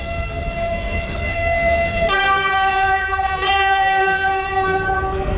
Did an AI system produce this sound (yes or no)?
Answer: yes